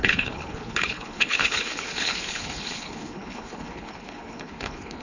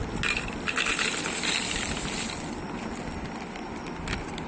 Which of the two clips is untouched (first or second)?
second